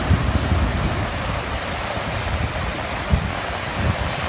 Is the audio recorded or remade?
recorded